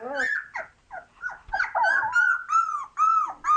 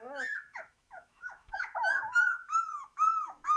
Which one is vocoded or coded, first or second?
second